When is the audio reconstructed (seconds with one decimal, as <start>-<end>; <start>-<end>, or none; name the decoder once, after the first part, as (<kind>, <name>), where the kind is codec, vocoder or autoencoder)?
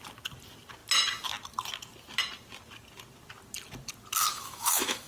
4.3-5.1 (autoencoder, DAC-VAE)